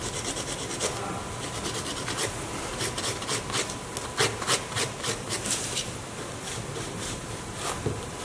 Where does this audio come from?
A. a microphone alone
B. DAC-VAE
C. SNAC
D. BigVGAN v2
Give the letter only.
A